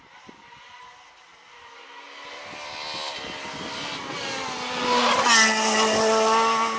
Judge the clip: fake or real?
real